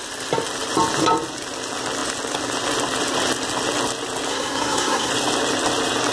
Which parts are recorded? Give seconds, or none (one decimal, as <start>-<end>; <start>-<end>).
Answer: 0.0-4.3; 5.1-6.1

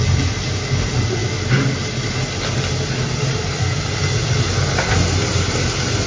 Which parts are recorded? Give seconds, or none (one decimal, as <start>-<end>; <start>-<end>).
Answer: 0.0-6.1

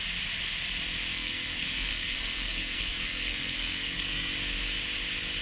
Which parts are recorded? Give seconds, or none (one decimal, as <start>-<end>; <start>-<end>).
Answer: 0.0-1.1; 4.3-5.4

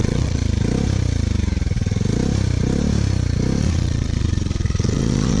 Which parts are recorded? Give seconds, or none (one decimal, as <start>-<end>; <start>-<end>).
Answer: 0.4-3.6

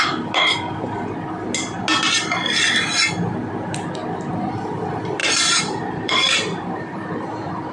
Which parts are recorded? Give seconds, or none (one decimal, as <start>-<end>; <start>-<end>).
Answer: 0.0-5.2

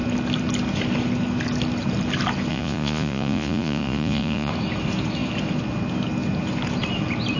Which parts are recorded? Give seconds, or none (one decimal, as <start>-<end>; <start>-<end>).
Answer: 0.0-2.5; 4.5-7.4

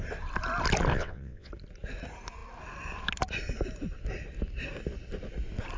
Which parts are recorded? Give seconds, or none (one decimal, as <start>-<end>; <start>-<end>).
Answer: 0.0-0.9; 1.5-5.8